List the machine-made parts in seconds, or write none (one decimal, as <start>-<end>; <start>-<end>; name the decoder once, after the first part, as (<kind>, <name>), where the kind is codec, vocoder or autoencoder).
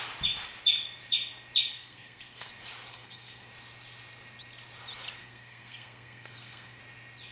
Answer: 1.7-2.5 (codec, SNAC); 2.9-3.5; 5.2-6.8